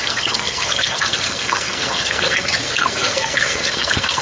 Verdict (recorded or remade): remade